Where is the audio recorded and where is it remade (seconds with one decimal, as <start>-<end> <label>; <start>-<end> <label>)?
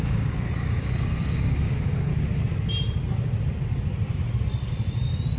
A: 0.0-2.1 remade; 2.1-5.4 recorded